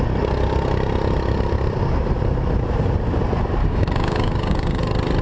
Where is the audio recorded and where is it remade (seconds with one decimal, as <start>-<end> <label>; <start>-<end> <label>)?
0.0-3.6 recorded; 3.6-4.8 remade; 4.8-5.2 recorded